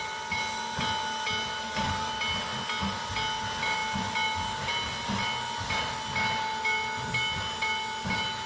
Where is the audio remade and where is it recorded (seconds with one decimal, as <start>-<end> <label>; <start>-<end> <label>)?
0.0-1.6 recorded; 1.6-2.1 remade; 2.1-8.5 recorded

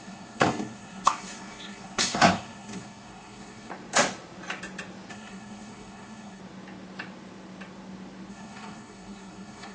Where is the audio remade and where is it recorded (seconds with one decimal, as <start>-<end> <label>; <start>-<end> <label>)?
0.0-3.7 remade; 3.7-5.1 recorded; 5.1-6.4 remade; 6.4-8.3 recorded; 8.3-9.7 remade

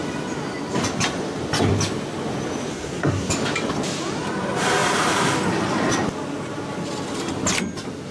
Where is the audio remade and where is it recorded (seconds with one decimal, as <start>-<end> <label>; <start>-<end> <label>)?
0.0-2.7 recorded; 2.7-3.3 remade; 3.3-8.1 recorded

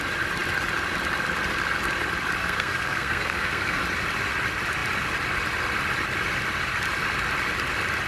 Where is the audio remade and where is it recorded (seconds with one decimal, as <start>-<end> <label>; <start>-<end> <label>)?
0.0-2.4 recorded; 2.4-3.8 remade; 3.8-8.1 recorded

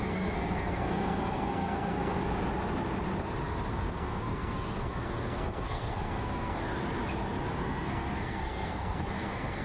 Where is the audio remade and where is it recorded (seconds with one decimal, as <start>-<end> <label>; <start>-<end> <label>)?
0.0-2.2 remade; 2.2-3.7 recorded; 3.7-6.6 remade; 6.6-7.6 recorded; 7.6-9.6 remade

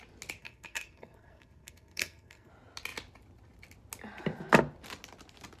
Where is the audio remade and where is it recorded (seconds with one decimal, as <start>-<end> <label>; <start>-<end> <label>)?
0.0-0.4 recorded; 0.4-2.5 remade; 2.5-5.6 recorded

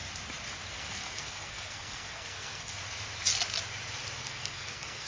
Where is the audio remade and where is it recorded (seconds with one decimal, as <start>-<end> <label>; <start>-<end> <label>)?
0.0-0.7 recorded; 0.7-2.8 remade; 2.8-4.2 recorded; 4.2-5.1 remade